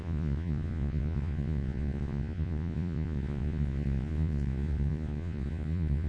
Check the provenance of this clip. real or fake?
fake